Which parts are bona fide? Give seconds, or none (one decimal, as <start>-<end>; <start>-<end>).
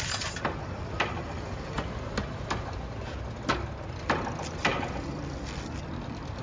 0.0-6.4